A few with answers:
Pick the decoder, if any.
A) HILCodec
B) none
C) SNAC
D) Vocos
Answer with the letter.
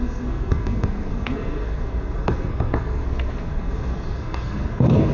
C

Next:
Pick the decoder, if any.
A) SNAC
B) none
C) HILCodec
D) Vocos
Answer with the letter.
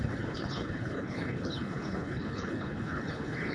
C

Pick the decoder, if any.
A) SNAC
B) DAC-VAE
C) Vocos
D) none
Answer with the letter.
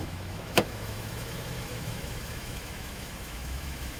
B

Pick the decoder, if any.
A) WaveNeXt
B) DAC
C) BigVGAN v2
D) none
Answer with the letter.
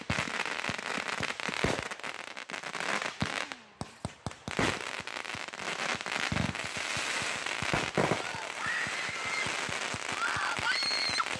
D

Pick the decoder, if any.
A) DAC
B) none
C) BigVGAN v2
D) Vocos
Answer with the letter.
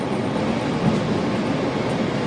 B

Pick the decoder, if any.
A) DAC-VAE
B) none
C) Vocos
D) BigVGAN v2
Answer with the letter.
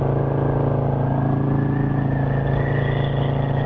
B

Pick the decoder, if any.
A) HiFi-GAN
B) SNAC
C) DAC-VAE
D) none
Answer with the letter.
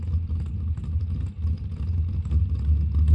D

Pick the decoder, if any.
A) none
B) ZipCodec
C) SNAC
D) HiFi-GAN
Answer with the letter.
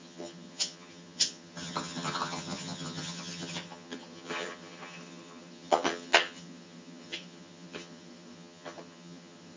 D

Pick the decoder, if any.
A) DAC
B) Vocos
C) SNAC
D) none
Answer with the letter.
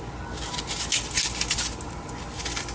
D